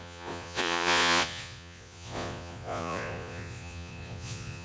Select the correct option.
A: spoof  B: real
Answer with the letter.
A